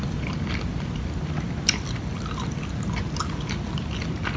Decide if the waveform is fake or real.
real